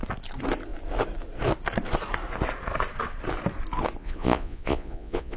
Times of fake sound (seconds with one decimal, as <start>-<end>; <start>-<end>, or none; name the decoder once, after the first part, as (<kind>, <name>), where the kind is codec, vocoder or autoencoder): 4.0-5.4 (vocoder, Vocos)